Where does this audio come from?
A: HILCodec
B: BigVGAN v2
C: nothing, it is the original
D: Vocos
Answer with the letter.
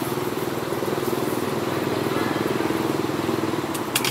C